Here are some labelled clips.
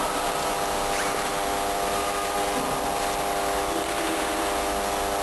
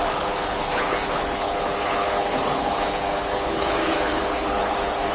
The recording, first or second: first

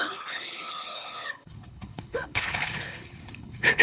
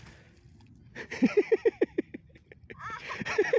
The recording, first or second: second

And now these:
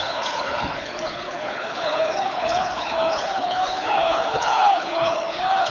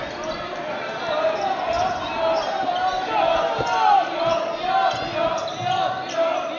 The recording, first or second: second